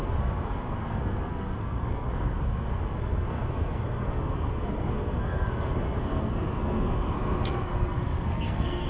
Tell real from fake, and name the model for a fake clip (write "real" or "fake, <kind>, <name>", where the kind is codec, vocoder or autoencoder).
fake, codec, SNAC